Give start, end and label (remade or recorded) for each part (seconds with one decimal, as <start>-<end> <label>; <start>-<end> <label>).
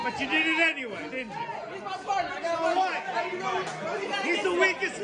0.0-5.0 recorded